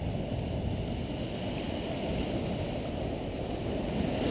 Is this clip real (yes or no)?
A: yes